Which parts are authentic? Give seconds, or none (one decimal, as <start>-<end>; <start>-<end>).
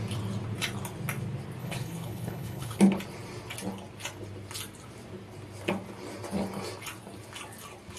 0.0-1.6; 2.8-8.0